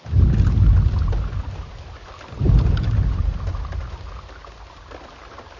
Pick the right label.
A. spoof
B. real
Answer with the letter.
B